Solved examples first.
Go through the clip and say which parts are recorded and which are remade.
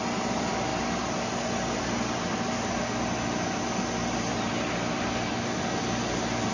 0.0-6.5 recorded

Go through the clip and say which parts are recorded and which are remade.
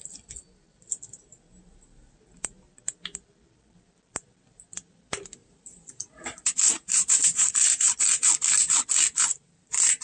0.0-5.4 recorded; 5.4-8.1 remade; 8.1-9.3 recorded; 9.3-10.0 remade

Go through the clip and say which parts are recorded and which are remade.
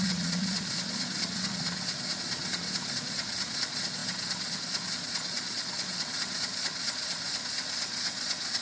0.0-8.6 remade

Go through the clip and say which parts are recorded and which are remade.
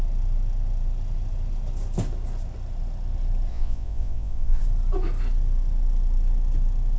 0.0-3.5 recorded; 3.5-4.6 remade; 4.6-7.0 recorded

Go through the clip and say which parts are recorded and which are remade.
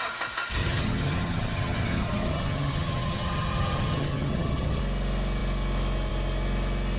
0.0-0.6 recorded; 0.6-4.8 remade; 4.8-7.0 recorded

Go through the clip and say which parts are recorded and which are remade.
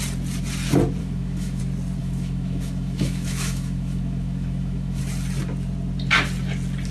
0.0-1.0 recorded; 1.0-1.6 remade; 1.6-2.0 recorded; 2.0-5.0 remade; 5.0-6.9 recorded